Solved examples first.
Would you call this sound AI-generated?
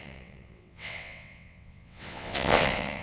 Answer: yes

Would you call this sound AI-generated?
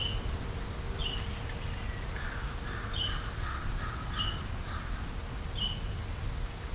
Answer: no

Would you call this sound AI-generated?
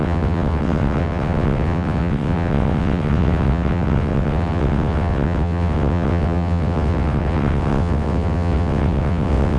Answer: yes